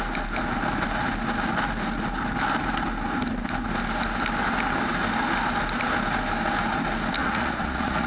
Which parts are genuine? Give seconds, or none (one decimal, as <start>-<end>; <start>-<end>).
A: 0.0-7.2